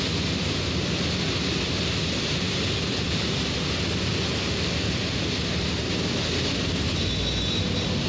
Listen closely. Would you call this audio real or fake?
real